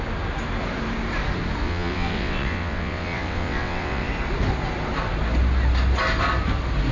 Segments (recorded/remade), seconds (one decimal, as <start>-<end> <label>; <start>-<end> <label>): 0.0-1.6 recorded; 1.6-4.1 remade; 4.1-6.9 recorded